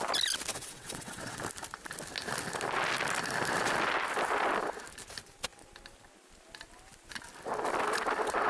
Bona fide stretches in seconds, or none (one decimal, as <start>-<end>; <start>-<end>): 0.0-0.5; 1.4-8.5